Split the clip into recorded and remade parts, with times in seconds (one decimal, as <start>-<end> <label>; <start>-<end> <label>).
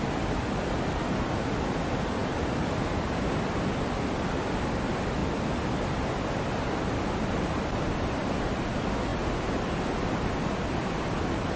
0.0-11.6 recorded